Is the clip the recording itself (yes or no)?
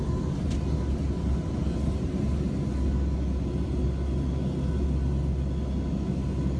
yes